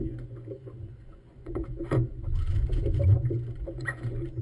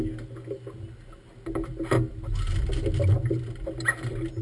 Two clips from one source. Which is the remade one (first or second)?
first